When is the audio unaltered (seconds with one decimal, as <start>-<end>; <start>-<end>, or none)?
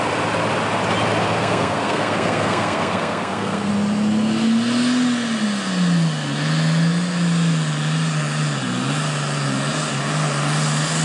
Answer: 0.0-1.4; 3.7-11.0